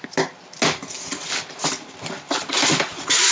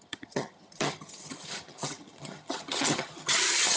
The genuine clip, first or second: first